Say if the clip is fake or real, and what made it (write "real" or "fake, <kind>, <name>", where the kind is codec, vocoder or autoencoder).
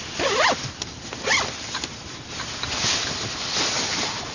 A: real